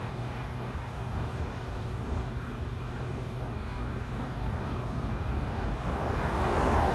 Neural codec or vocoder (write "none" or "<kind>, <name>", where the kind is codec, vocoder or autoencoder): codec, DAC